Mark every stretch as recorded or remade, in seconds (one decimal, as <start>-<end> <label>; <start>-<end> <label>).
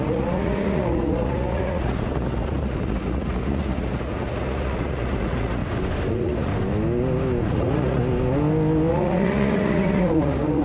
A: 0.0-5.6 remade; 5.6-6.1 recorded; 6.1-6.5 remade; 6.5-7.4 recorded; 7.4-8.0 remade; 8.0-8.9 recorded; 8.9-10.6 remade